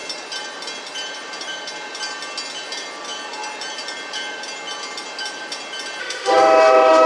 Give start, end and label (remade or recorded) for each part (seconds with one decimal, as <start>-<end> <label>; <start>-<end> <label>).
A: 0.0-6.0 recorded; 6.0-7.1 remade

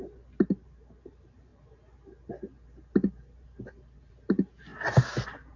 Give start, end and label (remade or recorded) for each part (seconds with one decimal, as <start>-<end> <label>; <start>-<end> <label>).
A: 0.0-1.5 recorded; 1.5-4.1 remade; 4.1-4.7 recorded; 4.7-5.6 remade

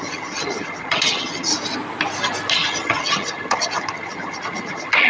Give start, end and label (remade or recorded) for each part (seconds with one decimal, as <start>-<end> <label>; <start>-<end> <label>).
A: 0.0-1.5 remade; 1.5-2.5 recorded; 2.5-5.1 remade

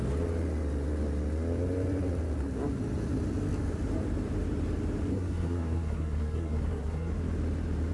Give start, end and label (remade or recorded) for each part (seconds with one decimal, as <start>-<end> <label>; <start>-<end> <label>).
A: 0.0-5.1 recorded; 5.1-7.1 remade; 7.1-7.9 recorded